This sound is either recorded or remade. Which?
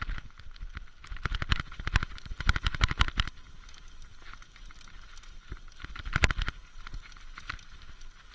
recorded